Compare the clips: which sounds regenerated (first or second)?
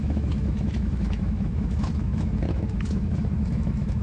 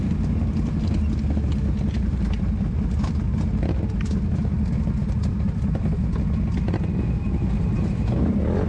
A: first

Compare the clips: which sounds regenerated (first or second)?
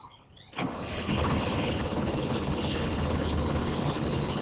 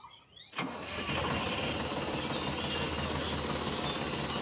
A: first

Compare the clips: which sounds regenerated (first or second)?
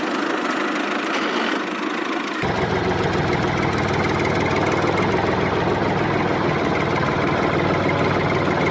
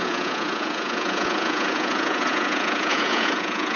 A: second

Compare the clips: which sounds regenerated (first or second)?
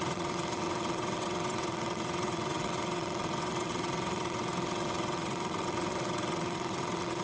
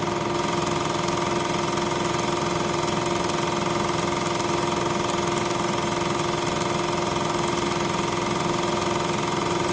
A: first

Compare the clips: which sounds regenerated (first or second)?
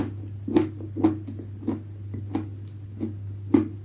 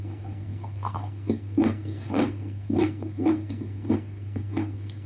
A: second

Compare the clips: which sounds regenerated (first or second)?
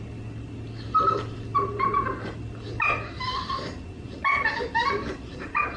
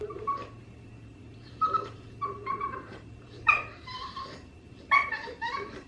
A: second